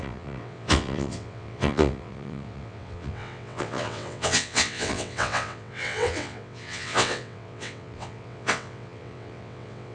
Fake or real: fake